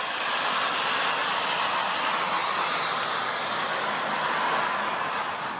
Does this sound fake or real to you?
real